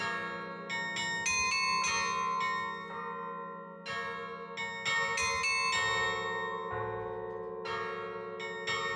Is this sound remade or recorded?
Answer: recorded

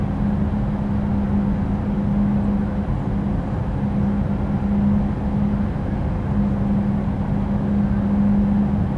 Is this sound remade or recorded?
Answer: recorded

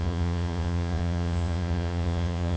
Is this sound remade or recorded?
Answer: remade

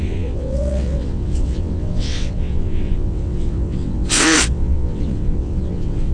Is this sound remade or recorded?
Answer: remade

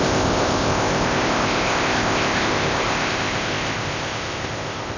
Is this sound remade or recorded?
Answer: remade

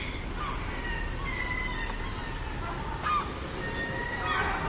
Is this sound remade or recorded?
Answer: recorded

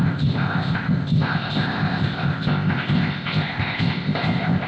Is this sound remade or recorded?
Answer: remade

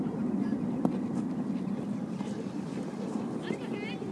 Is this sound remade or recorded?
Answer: remade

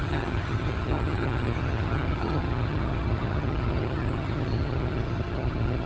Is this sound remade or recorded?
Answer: remade